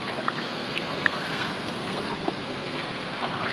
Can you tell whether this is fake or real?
fake